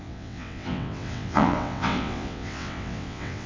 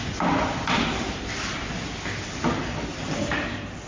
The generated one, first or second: first